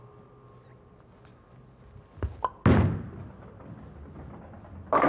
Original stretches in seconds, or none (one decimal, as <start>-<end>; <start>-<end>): 0.0-5.1